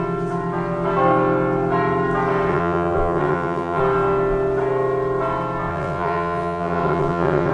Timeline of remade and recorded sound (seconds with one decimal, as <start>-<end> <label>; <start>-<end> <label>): 0.0-2.5 recorded; 2.5-3.8 remade; 3.8-5.7 recorded; 5.7-7.5 remade